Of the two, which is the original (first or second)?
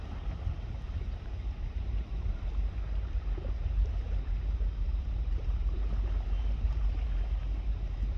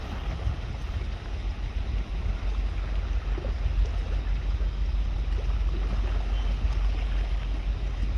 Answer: second